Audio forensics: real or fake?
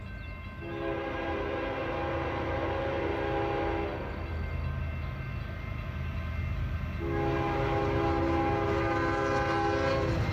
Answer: real